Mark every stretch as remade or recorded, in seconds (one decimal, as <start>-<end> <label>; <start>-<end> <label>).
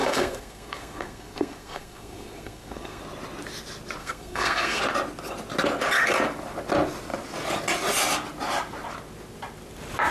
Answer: 0.0-3.0 remade; 3.0-4.0 recorded; 4.0-4.8 remade; 4.8-10.1 recorded